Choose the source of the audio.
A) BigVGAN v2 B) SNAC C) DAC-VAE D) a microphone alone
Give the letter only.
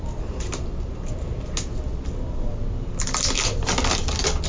D